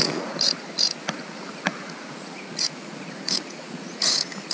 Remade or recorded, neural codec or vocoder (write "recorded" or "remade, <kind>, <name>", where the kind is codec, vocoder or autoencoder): remade, vocoder, Vocos